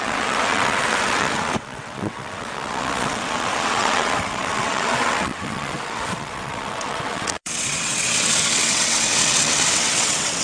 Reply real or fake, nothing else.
fake